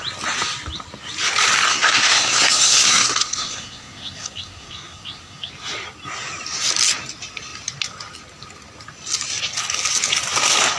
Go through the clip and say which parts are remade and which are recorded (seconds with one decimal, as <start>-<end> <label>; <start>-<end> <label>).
0.0-1.7 recorded; 1.7-5.5 remade; 5.5-10.8 recorded